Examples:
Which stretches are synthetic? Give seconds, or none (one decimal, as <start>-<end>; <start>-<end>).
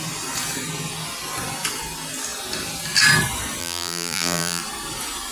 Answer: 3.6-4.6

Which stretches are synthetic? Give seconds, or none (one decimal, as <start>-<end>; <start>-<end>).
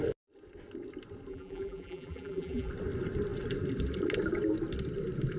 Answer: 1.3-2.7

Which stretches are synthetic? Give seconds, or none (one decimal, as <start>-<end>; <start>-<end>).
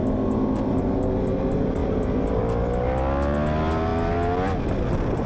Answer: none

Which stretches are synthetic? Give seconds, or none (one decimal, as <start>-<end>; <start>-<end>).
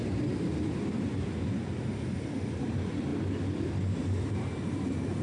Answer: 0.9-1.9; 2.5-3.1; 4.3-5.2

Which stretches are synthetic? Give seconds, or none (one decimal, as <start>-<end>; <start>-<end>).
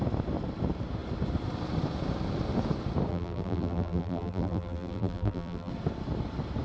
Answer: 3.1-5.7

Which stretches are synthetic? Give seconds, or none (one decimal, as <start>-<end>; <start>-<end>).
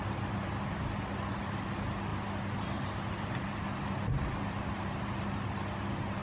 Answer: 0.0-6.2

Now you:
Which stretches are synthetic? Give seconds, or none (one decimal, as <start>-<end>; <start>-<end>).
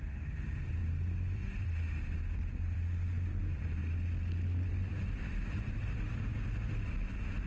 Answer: 0.0-3.8; 4.7-7.5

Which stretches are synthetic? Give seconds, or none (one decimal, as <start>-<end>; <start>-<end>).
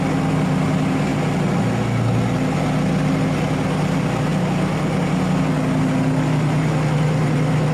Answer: none